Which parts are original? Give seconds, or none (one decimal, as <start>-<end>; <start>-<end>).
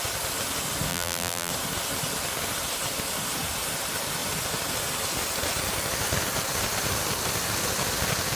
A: 0.0-0.9; 1.5-8.3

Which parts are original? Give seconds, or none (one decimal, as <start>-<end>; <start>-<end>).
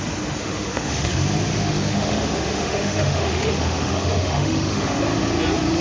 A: 0.0-0.4; 1.1-1.5; 5.0-5.8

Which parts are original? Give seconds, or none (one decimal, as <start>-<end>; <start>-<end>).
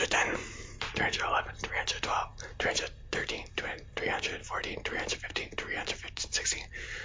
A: 0.0-7.0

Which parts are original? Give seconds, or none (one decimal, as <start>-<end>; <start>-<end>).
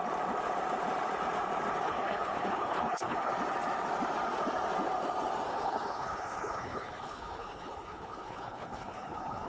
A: 0.0-1.8; 3.3-5.5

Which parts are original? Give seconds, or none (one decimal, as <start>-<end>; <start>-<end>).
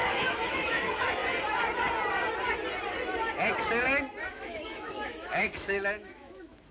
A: 1.2-4.3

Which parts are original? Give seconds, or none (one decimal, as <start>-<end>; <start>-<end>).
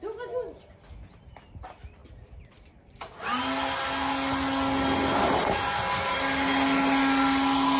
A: 0.0-7.8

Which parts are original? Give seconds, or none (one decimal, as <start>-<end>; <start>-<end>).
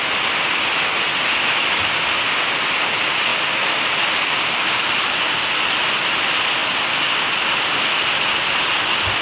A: 0.0-9.2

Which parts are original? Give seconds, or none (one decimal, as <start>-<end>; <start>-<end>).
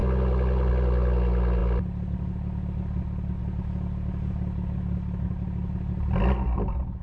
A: 0.0-7.0